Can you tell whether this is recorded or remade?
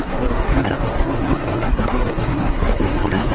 remade